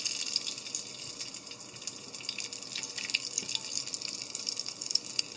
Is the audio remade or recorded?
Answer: recorded